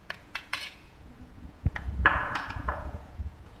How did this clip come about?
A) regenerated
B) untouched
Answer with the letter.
A